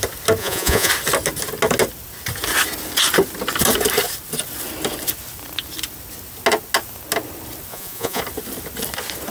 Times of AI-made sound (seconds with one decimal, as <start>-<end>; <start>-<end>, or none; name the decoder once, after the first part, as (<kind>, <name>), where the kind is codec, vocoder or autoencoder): 0.4-0.9 (vocoder, Vocos); 7.7-8.2